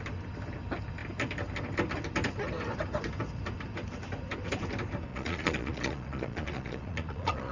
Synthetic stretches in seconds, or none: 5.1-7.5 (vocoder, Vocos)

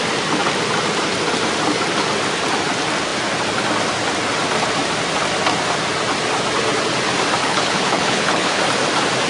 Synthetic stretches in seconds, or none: 7.4-8.6 (codec, HILCodec)

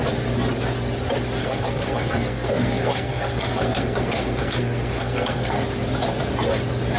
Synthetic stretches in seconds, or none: 1.4-5.6 (codec, SNAC)

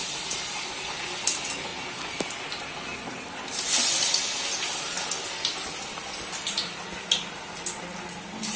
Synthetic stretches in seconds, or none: none

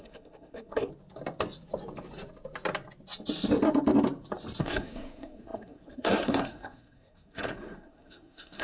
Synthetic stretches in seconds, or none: 0.0-0.9 (codec, SNAC); 4.6-8.6

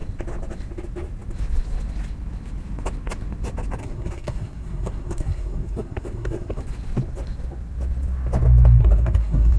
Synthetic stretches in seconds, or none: 3.8-6.6 (codec, SNAC); 8.8-9.6

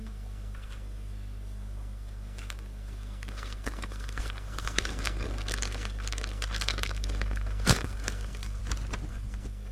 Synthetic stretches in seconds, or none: 0.0-8.6 (codec, SNAC); 9.1-9.7